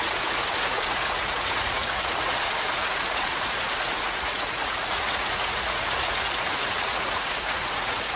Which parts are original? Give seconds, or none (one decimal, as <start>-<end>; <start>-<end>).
none